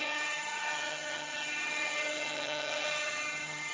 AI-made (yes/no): yes